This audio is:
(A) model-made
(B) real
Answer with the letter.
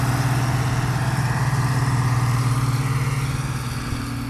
B